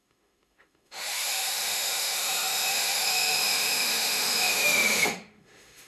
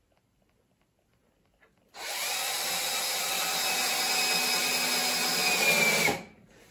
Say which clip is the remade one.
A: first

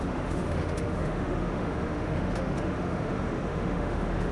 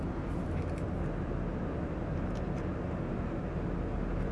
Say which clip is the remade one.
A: first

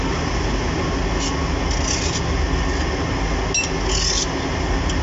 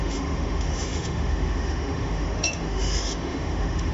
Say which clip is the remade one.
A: second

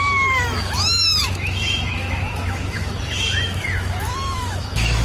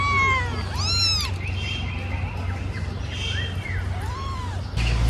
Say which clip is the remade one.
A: first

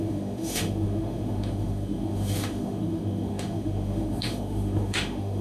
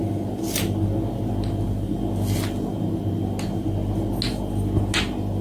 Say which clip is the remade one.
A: first